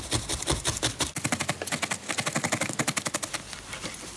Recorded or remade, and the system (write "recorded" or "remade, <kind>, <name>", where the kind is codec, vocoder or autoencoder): recorded